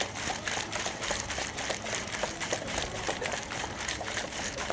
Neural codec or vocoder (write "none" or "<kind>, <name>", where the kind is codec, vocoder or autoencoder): vocoder, BigVGAN v2